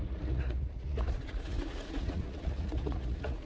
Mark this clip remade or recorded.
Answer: remade